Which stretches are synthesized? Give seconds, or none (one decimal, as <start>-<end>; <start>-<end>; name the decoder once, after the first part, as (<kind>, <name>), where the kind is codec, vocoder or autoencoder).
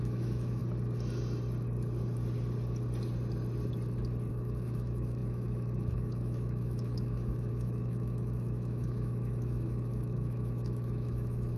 0.0-0.6 (autoencoder, DAC-VAE); 4.3-11.6